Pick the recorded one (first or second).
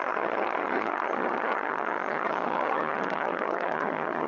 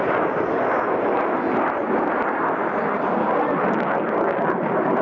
second